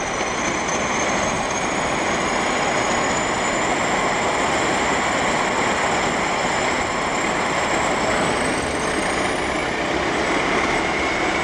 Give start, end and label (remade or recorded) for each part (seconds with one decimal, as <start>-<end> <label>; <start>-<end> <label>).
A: 0.0-11.4 recorded